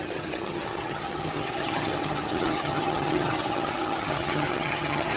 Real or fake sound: fake